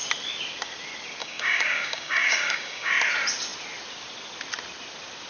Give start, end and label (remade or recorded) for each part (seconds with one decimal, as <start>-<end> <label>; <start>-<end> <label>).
0.0-1.2 recorded; 1.2-2.9 remade; 2.9-5.3 recorded